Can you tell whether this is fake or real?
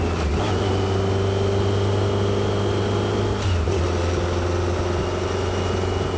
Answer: real